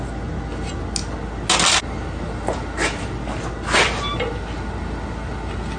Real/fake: real